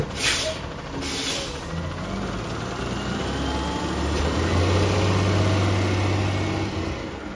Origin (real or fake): real